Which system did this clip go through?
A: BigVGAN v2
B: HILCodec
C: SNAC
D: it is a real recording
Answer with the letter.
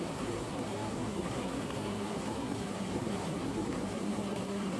C